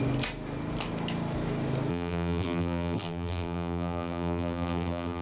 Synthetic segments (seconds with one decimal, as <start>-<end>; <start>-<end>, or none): 1.9-5.2